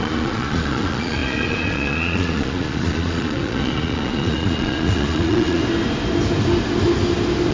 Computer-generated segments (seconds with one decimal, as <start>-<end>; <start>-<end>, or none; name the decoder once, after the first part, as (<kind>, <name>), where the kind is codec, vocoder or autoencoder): 0.0-5.6 (vocoder, Vocos)